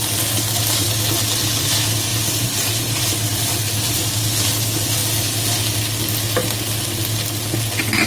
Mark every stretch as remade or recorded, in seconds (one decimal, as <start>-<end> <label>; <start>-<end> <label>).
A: 0.0-2.1 recorded; 2.1-4.1 remade; 4.1-8.1 recorded